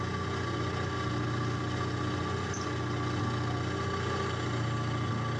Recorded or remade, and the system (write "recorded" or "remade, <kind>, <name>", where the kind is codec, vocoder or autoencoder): recorded